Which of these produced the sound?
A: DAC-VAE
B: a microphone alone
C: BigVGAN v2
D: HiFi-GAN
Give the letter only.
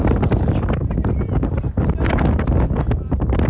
B